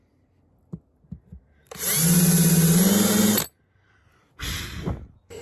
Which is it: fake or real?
real